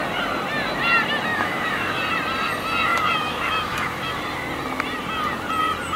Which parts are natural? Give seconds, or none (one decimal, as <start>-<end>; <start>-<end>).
0.0-1.3; 2.0-2.9; 4.2-6.0